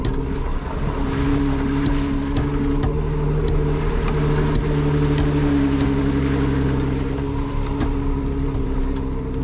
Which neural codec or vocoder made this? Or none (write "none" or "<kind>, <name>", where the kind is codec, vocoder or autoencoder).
none